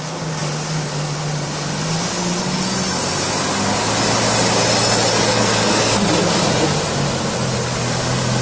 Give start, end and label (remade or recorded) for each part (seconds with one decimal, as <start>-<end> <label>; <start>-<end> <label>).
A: 0.0-5.3 recorded; 5.3-6.1 remade; 6.1-8.4 recorded